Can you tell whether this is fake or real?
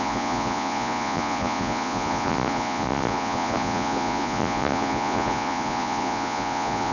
fake